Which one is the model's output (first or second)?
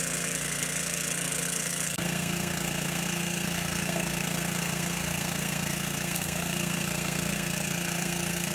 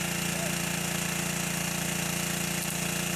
first